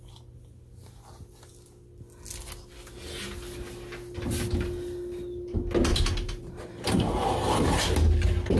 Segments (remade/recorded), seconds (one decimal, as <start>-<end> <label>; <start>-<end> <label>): 0.0-5.9 recorded; 5.9-7.8 remade; 7.8-8.6 recorded